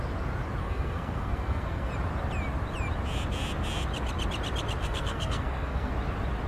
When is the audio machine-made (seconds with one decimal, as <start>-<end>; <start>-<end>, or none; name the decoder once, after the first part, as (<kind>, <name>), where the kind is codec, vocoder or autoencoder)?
0.6-1.9 (codec, SNAC); 4.8-5.9